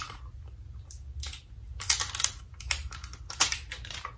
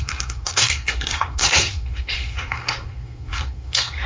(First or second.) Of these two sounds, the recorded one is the first